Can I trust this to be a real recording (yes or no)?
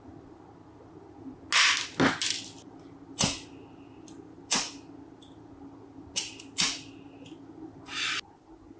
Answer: yes